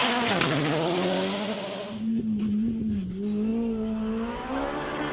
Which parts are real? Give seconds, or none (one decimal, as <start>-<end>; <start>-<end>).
0.0-5.1